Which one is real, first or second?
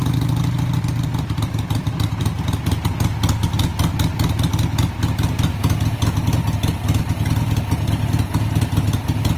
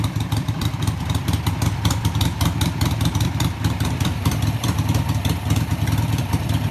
first